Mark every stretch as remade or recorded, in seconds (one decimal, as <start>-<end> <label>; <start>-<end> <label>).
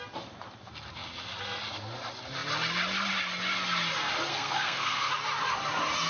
0.0-4.3 recorded; 4.3-5.1 remade; 5.1-6.1 recorded